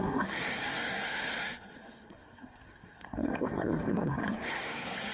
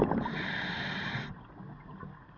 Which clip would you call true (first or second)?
second